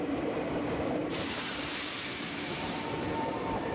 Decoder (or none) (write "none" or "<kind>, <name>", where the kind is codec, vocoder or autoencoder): vocoder, BigVGAN v2